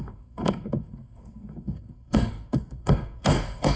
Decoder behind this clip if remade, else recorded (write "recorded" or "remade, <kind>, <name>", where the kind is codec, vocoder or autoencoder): remade, codec, SNAC